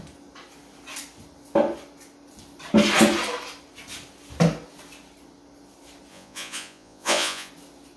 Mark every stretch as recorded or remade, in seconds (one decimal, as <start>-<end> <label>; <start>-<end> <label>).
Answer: 0.0-6.1 recorded; 6.1-7.5 remade; 7.5-8.0 recorded

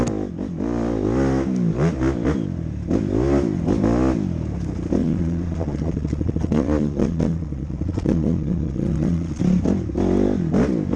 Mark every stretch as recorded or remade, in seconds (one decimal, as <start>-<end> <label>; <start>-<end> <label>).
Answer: 0.0-5.0 recorded; 5.0-9.4 remade; 9.4-11.0 recorded

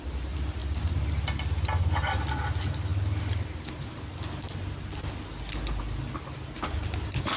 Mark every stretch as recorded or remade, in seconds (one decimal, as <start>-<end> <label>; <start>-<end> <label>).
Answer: 0.0-7.4 recorded

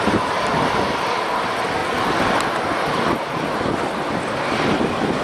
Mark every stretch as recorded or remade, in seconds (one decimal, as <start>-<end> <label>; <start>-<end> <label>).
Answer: 0.0-5.2 recorded

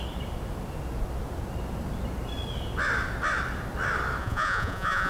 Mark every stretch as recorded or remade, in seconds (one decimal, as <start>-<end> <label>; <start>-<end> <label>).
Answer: 0.0-4.2 recorded; 4.2-5.1 remade

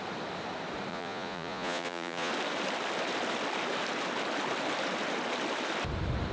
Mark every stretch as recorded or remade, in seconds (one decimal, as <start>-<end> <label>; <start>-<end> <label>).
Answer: 0.0-0.9 recorded; 0.9-2.3 remade; 2.3-6.3 recorded

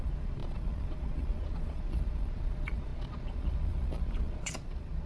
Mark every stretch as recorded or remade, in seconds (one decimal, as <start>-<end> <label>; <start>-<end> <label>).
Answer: 0.0-5.1 remade